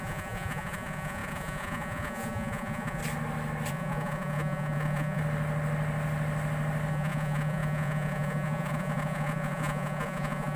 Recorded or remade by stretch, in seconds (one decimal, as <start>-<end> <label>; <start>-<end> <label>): 0.0-3.0 remade; 3.0-3.7 recorded; 3.7-5.2 remade; 5.2-6.9 recorded; 6.9-10.6 remade